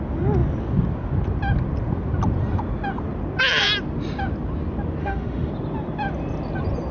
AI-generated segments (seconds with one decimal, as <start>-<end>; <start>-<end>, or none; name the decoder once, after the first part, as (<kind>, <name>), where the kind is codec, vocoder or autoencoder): 5.0-5.5 (autoencoder, DAC-VAE)